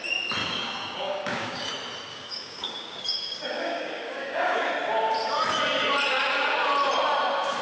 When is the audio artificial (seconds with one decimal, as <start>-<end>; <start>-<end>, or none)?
0.4-1.7; 2.1-4.7